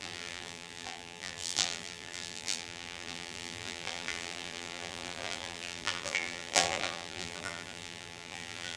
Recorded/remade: remade